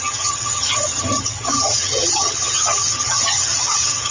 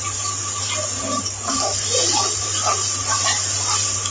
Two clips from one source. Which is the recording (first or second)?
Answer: second